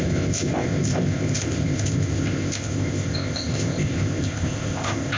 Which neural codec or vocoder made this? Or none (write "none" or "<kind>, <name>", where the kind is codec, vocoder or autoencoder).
codec, ZipCodec